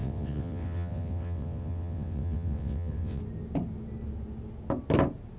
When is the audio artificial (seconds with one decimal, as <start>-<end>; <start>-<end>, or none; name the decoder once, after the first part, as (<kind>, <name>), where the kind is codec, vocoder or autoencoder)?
0.0-3.2 (vocoder, WaveNeXt)